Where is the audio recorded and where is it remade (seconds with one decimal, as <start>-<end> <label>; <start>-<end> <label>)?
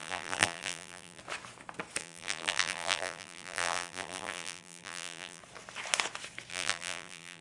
0.0-1.2 remade; 1.2-2.0 recorded; 2.0-5.4 remade; 5.4-6.5 recorded; 6.5-7.4 remade